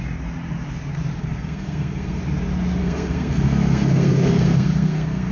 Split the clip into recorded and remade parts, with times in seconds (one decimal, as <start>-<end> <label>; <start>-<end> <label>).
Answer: 0.0-1.2 recorded; 1.2-2.2 remade; 2.2-2.8 recorded; 2.8-5.3 remade